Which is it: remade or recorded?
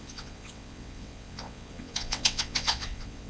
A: remade